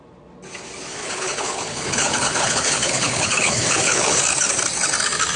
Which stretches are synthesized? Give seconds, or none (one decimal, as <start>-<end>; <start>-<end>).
1.0-4.2